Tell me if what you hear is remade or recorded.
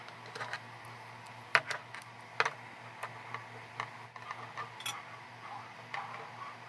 recorded